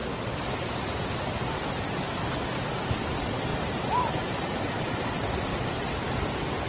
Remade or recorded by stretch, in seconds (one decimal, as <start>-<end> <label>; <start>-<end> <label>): 0.0-2.9 remade; 2.9-3.5 recorded; 3.5-5.1 remade; 5.1-6.7 recorded

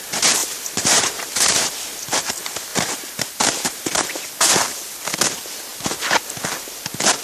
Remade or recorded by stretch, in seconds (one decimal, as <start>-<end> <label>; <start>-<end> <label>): 0.0-0.4 recorded; 0.4-2.3 remade; 2.3-2.7 recorded; 2.7-4.3 remade; 4.3-7.2 recorded

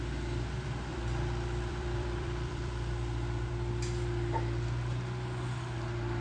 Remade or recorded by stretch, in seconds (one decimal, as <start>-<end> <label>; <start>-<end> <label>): 0.0-0.9 recorded; 0.9-3.5 remade; 3.5-6.2 recorded

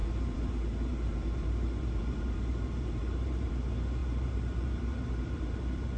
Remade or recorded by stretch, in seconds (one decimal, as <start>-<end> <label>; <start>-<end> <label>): 0.0-0.5 remade; 0.5-0.9 recorded; 0.9-3.5 remade; 3.5-4.0 recorded; 4.0-6.0 remade

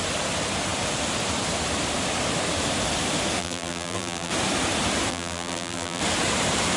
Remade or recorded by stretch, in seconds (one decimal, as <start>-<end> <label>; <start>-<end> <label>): 0.0-3.4 recorded; 3.4-4.3 remade; 4.3-5.1 recorded; 5.1-6.0 remade; 6.0-6.8 recorded

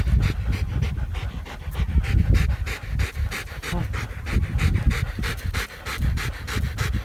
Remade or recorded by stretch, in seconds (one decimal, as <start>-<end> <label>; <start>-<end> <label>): 0.0-7.0 recorded